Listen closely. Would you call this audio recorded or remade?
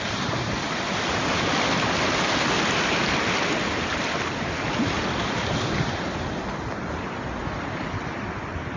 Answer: recorded